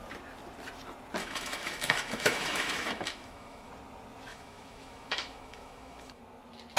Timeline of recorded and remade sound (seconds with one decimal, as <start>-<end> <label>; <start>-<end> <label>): 0.0-1.2 recorded; 1.2-3.7 remade; 3.7-4.3 recorded; 4.3-6.2 remade; 6.2-6.8 recorded